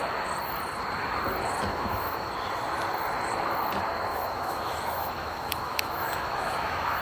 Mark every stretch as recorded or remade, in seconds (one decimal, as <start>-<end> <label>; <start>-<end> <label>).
0.0-1.7 recorded; 1.7-2.3 remade; 2.3-4.1 recorded; 4.1-7.0 remade